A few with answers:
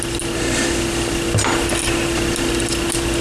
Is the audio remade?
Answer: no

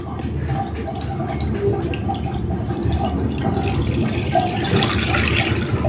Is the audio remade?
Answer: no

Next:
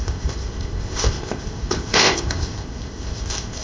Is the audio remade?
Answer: yes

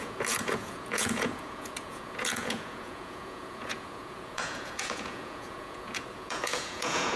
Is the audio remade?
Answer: yes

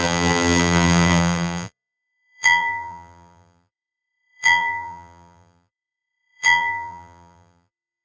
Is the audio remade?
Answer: yes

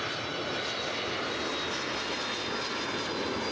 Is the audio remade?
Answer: no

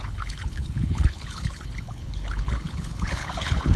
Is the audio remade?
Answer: yes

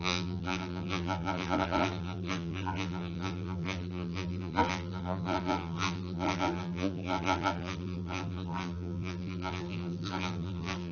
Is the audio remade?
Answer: yes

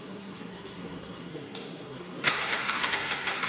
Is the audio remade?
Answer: yes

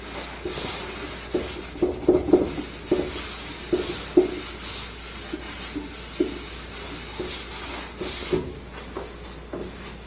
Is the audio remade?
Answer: no